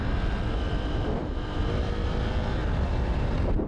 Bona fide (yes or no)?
yes